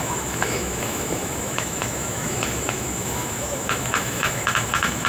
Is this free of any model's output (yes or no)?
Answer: no